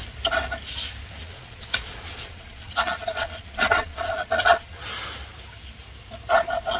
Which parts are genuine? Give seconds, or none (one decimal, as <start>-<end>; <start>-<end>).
0.0-1.2; 4.8-6.8